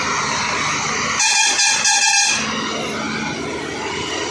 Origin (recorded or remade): recorded